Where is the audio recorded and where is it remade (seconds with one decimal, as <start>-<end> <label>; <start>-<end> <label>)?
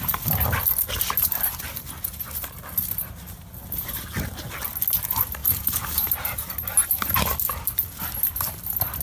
0.0-5.4 recorded; 5.4-6.5 remade; 6.5-9.0 recorded